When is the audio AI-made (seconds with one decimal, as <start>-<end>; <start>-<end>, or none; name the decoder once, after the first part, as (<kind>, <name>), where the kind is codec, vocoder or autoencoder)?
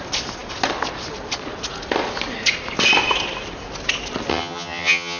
4.3-5.2 (vocoder, HiFi-GAN)